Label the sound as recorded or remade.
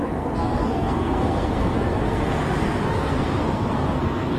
remade